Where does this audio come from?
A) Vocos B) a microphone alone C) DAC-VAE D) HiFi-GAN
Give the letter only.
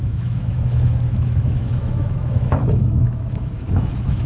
C